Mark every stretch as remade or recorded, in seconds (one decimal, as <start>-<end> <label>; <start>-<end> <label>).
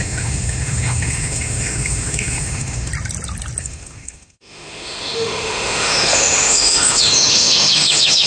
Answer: 0.0-2.9 remade; 2.9-3.6 recorded; 3.6-8.3 remade